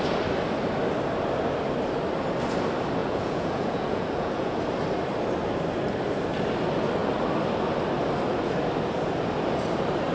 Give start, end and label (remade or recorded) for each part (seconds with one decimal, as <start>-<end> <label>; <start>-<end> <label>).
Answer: 0.0-3.0 recorded; 3.0-4.6 remade; 4.6-10.1 recorded